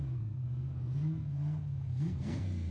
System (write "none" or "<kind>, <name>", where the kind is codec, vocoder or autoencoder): codec, SNAC